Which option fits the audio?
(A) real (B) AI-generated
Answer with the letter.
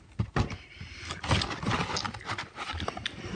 A